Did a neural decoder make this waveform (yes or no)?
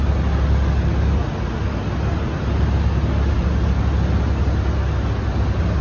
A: no